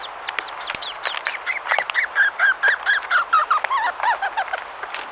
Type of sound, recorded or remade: recorded